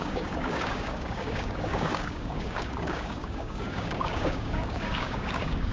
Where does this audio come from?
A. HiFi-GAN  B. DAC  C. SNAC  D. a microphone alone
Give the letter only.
B